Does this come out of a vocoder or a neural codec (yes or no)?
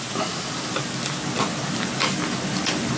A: no